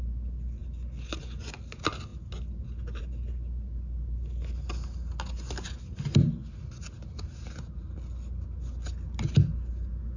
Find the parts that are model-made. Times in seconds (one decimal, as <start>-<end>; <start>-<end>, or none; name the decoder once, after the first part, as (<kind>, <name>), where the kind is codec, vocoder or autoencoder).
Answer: none